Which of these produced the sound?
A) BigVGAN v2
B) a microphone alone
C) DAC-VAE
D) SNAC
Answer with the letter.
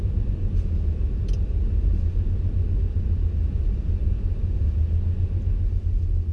B